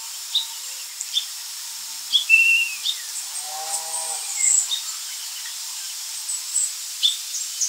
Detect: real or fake real